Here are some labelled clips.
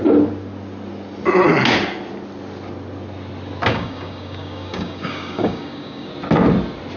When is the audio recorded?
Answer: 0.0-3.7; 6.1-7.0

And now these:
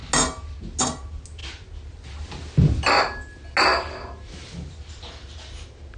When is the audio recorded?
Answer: 0.0-6.0

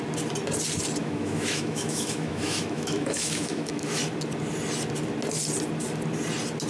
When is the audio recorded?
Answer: 0.0-1.0; 4.0-6.7

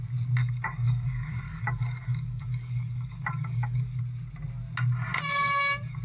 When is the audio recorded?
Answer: 0.0-0.4; 4.0-5.3

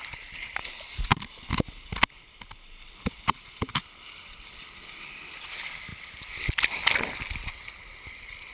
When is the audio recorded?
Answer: 0.0-8.5